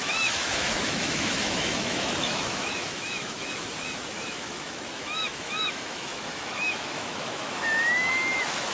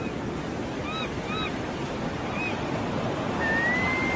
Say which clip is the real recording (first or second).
second